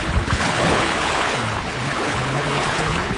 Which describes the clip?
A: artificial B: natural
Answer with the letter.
A